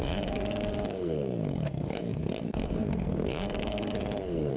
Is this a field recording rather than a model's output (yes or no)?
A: no